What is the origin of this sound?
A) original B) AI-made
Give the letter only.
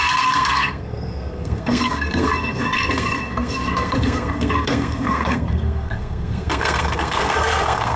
B